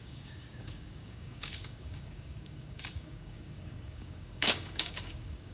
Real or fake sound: fake